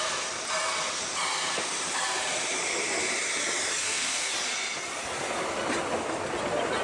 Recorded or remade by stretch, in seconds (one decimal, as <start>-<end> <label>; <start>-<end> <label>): 0.0-3.8 recorded; 3.8-4.3 remade; 4.3-6.8 recorded